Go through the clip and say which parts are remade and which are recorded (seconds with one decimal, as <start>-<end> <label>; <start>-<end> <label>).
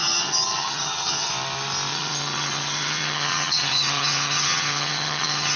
0.0-1.3 remade; 1.3-1.9 recorded; 1.9-5.6 remade